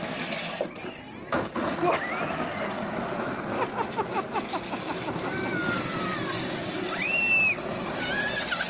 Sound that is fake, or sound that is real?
real